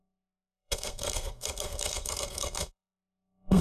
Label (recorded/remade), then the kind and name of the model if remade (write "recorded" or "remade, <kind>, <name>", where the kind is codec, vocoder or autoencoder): remade, codec, SNAC